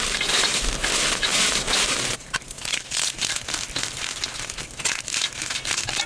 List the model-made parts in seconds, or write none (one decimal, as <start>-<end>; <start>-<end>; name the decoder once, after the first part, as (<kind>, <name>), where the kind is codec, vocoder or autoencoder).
none